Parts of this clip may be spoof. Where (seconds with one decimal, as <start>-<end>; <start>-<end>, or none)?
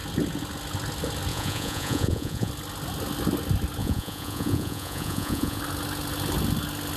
1.3-2.5; 3.8-5.6